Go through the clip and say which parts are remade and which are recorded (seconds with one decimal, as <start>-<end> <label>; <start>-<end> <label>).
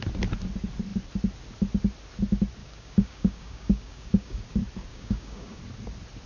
0.0-2.6 recorded; 2.6-4.4 remade; 4.4-4.9 recorded; 4.9-5.6 remade; 5.6-6.3 recorded